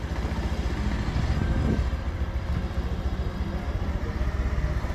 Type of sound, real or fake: real